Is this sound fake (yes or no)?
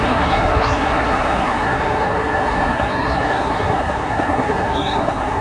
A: yes